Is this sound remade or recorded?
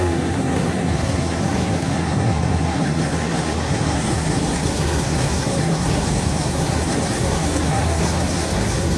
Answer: remade